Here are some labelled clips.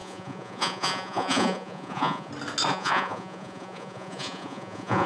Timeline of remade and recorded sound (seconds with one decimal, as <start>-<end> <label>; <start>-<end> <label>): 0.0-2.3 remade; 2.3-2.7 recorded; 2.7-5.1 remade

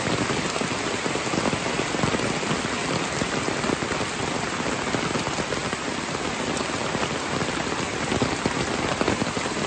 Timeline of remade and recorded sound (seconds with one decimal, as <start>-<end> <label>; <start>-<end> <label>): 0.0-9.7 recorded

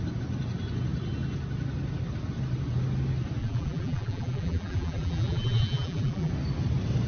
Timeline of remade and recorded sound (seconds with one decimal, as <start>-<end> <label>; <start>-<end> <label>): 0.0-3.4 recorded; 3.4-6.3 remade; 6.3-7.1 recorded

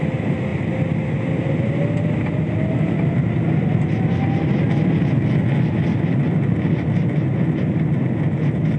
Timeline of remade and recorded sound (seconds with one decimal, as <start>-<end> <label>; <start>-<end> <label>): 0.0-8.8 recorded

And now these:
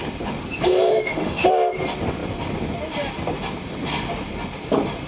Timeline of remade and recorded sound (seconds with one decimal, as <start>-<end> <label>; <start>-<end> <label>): 0.0-0.9 recorded; 0.9-1.5 remade; 1.5-5.1 recorded

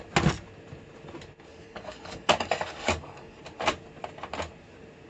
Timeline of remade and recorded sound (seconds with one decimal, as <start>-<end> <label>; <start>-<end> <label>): 0.0-1.5 recorded; 1.5-3.4 remade; 3.4-5.1 recorded

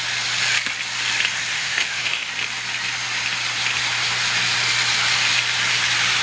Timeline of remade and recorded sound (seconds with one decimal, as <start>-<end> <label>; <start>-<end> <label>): 0.0-1.5 recorded; 1.5-2.3 remade; 2.3-6.2 recorded

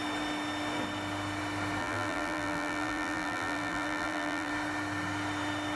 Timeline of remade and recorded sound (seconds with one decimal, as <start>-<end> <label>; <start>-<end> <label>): 0.0-1.8 recorded; 1.8-4.5 remade; 4.5-5.8 recorded